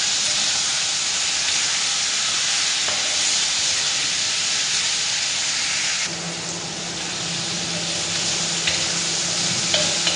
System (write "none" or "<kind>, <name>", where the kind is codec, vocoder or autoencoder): none